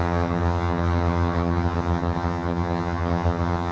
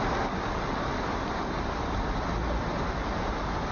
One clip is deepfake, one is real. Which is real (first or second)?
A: second